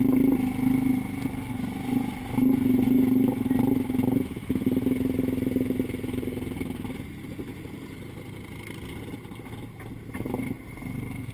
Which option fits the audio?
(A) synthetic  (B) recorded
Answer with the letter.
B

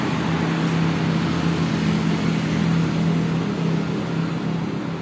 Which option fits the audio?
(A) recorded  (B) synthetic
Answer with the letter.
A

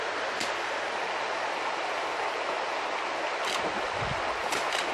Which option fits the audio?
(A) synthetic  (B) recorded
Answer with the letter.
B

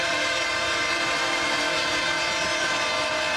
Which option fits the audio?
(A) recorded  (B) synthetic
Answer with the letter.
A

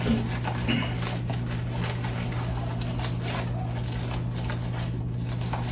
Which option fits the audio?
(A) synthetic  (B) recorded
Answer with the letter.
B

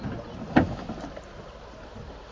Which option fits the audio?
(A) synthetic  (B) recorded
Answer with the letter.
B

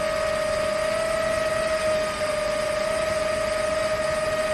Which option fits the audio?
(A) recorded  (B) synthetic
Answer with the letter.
A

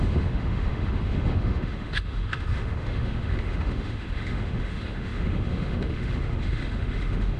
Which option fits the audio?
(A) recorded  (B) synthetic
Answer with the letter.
B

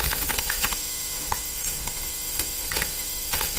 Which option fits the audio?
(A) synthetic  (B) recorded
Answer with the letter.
A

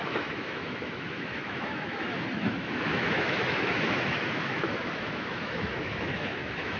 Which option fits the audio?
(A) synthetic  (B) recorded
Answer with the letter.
A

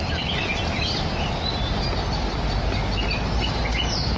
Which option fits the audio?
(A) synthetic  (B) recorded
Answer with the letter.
B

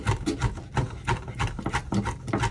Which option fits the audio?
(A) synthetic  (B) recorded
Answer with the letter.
B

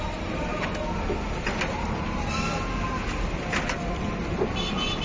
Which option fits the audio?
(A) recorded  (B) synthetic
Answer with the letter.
A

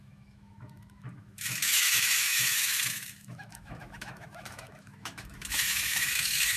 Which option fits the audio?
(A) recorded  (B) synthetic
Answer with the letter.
B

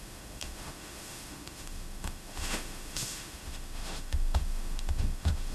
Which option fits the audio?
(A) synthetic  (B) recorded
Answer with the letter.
A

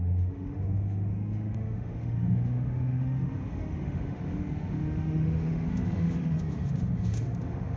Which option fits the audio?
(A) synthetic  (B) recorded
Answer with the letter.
A